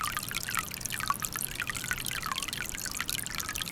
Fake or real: real